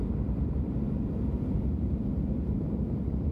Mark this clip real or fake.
fake